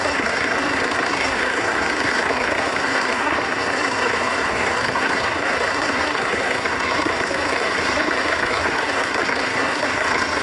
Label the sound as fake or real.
fake